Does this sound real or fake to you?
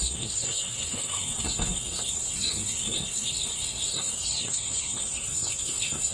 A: fake